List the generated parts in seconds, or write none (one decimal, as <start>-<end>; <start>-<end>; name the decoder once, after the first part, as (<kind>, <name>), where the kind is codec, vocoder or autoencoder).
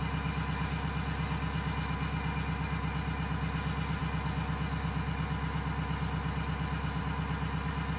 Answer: none